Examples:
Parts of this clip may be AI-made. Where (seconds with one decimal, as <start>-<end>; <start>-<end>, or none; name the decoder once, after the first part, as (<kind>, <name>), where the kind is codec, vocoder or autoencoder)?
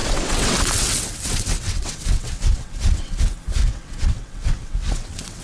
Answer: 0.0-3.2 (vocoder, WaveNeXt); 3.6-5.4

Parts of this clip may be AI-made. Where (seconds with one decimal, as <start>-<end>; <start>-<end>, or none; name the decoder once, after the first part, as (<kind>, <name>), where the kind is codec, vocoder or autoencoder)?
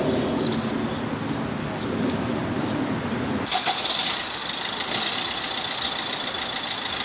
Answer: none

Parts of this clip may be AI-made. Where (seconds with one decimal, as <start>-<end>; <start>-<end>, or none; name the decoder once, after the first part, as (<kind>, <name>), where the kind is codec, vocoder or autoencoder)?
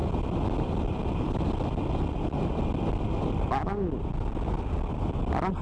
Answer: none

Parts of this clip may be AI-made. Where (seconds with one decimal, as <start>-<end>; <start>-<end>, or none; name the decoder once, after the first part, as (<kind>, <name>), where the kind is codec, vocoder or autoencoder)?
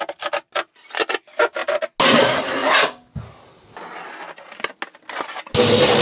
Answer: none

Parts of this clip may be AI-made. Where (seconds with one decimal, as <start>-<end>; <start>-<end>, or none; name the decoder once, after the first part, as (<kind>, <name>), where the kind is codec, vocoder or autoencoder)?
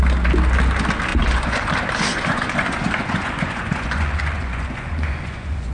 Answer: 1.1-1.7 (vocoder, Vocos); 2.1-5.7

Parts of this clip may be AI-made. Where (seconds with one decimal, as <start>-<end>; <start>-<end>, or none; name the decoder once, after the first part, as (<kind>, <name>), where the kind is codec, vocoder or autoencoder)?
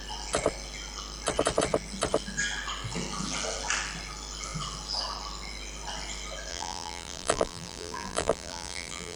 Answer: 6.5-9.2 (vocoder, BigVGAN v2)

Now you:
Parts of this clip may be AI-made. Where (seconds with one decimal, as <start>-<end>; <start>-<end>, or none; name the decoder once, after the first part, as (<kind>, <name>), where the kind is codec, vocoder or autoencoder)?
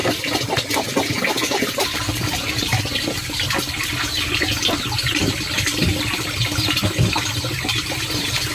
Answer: none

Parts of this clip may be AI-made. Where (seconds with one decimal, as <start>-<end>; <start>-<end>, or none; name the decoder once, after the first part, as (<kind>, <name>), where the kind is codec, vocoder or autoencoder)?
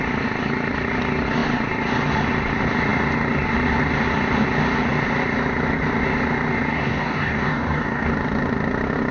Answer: 6.7-8.1 (codec, DAC)